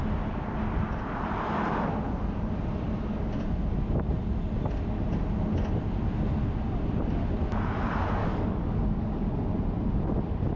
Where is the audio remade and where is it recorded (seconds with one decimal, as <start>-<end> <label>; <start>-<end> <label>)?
0.0-8.2 recorded; 8.2-9.3 remade; 9.3-10.6 recorded